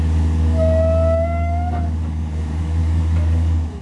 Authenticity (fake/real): fake